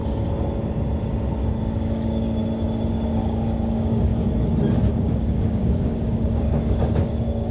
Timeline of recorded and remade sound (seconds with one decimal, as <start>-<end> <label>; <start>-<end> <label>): 0.0-1.4 recorded; 1.4-2.4 remade; 2.4-2.9 recorded; 2.9-4.1 remade; 4.1-5.0 recorded; 5.0-7.5 remade